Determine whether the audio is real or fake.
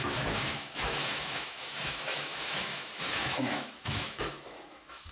fake